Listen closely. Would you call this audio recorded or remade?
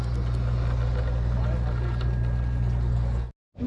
recorded